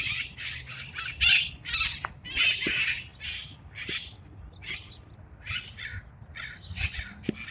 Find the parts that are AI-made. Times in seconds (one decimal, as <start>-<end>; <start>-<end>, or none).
none